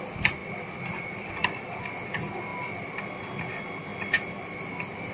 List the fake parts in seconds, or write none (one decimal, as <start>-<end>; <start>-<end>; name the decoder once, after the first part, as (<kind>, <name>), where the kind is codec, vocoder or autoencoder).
none